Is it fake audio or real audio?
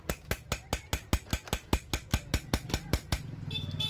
real